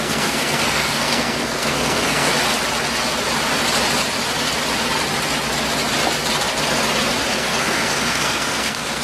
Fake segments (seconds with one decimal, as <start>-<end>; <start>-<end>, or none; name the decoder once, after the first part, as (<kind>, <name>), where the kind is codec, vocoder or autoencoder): 0.0-2.3 (codec, SNAC); 7.3-9.0